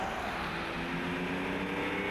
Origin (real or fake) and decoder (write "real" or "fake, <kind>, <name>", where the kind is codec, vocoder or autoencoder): real